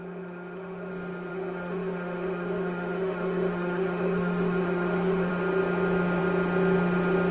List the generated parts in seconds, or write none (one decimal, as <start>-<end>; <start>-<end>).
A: 0.0-0.9; 1.3-5.3

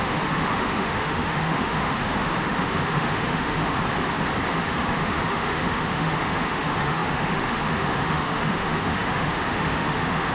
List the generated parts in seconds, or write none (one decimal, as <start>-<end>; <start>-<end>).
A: 0.0-3.8; 4.5-10.3

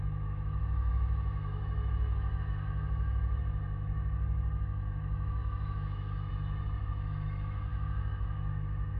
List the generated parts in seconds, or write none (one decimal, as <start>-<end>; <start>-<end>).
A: 0.0-9.0

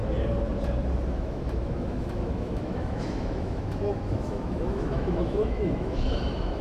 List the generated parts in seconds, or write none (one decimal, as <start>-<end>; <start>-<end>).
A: 1.1-6.6